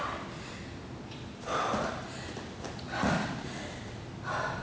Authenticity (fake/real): real